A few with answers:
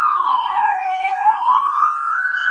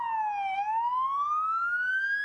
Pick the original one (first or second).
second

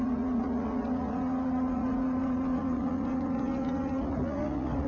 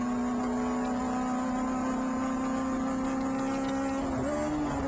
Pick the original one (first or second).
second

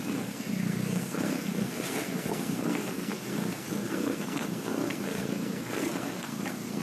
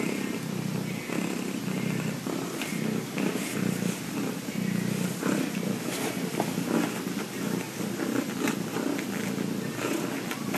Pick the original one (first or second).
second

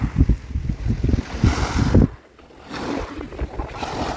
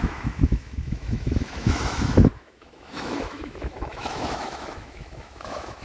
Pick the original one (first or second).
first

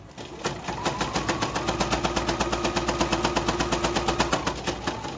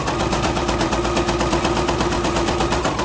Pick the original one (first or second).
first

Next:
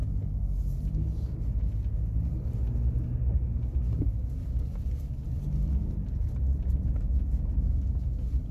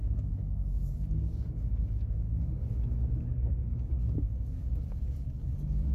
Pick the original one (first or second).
first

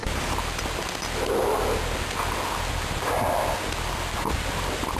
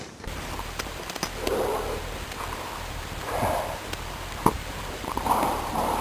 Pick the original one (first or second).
first